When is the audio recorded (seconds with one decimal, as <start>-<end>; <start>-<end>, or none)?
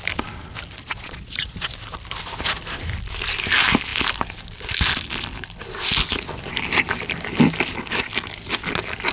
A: 0.0-0.8; 1.7-9.1